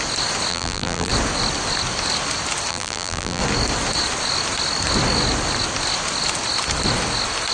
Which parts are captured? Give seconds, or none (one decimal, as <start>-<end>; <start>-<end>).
0.0-0.5; 1.1-2.7; 3.4-7.5